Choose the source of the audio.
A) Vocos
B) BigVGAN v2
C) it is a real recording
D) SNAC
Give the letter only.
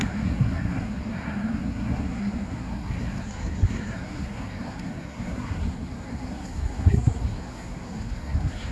D